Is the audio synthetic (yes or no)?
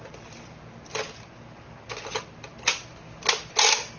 no